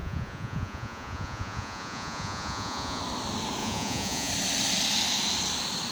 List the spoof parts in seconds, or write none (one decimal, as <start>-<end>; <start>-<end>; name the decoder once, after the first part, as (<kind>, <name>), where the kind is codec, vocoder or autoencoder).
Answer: 0.0-3.0 (vocoder, Vocos); 3.6-4.3